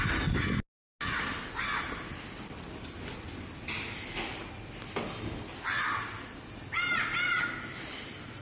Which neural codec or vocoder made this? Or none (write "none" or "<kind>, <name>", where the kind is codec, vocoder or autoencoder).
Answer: none